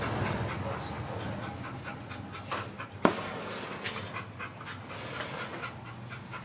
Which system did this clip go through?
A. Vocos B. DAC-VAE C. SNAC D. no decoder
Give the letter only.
D